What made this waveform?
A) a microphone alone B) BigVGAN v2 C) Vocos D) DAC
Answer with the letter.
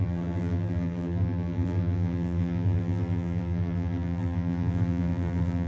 B